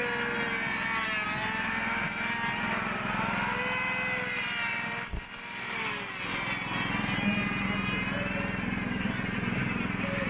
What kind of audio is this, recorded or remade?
recorded